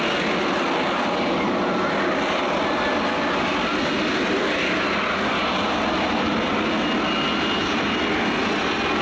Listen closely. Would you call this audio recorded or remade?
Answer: recorded